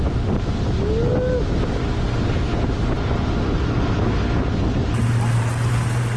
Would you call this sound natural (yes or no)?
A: yes